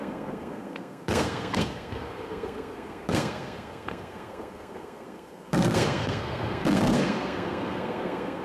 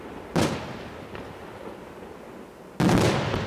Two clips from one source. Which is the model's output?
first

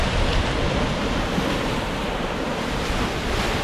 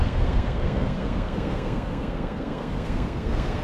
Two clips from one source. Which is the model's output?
second